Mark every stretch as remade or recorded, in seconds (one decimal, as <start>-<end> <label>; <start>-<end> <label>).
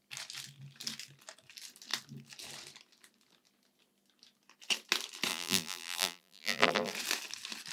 0.0-5.3 recorded; 5.3-6.9 remade; 6.9-7.7 recorded